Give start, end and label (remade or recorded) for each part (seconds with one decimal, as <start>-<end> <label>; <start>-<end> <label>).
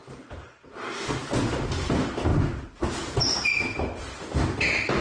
0.0-1.2 remade; 1.2-5.0 recorded